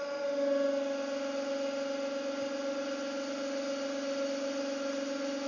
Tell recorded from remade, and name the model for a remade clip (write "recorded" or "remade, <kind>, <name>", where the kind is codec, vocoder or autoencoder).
recorded